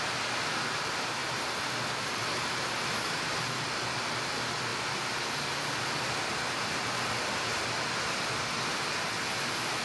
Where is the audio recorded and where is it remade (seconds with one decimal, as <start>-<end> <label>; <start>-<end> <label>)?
0.0-9.8 recorded